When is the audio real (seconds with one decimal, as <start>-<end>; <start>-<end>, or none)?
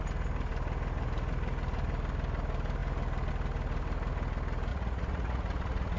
0.0-4.7